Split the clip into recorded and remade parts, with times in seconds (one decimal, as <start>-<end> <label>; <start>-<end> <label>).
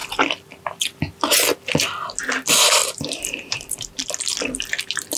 0.0-2.8 recorded; 2.8-4.0 remade; 4.0-5.2 recorded